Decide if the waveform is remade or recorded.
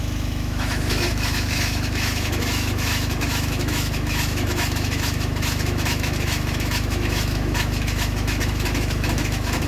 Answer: remade